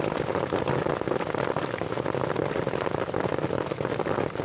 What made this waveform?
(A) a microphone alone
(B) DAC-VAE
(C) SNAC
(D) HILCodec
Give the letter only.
A